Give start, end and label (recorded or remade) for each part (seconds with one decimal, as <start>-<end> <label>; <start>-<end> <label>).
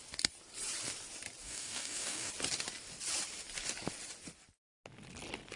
0.0-1.4 recorded; 1.4-2.3 remade; 2.3-5.6 recorded